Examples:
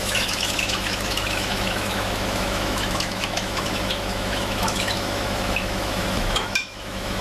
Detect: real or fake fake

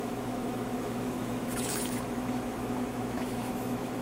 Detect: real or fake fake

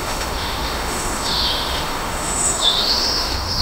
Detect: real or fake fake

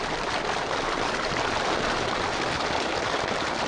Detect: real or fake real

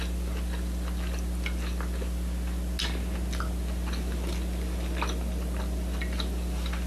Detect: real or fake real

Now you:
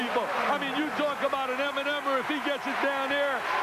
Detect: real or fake real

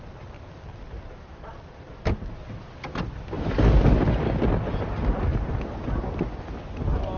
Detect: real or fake real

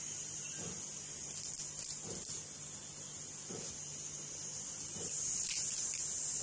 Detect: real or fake real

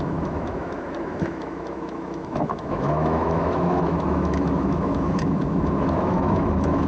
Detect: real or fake fake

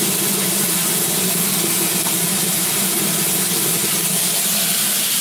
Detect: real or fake real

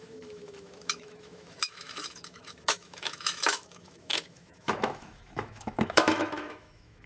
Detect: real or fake fake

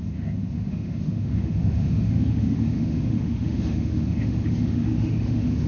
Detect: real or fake fake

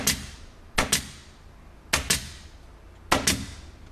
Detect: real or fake real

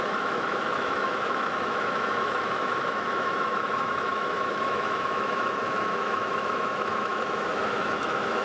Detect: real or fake fake